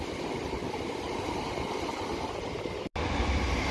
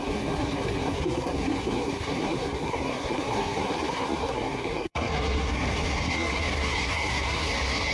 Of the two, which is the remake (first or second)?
second